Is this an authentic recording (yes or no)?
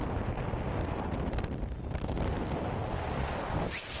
yes